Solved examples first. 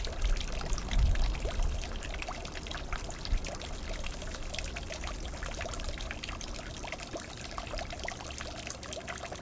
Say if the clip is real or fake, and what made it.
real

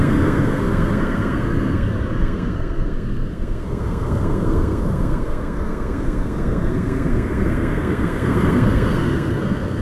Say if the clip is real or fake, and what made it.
fake, codec, SNAC